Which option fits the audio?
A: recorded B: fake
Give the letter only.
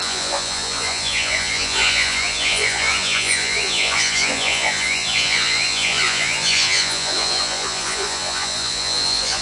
B